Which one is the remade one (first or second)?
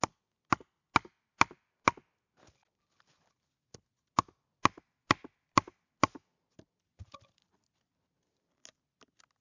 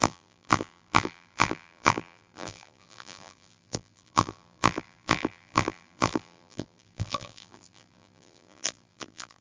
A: second